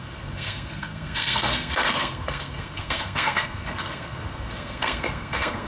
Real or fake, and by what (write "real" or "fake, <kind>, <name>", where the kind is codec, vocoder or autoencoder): fake, codec, SNAC